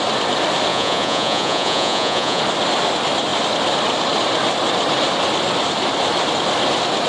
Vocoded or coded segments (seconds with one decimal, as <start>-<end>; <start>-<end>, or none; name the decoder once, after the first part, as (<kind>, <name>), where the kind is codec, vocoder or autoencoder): 0.7-2.4 (vocoder, Vocos)